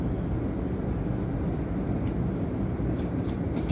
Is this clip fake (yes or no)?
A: no